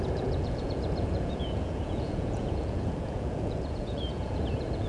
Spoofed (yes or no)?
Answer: yes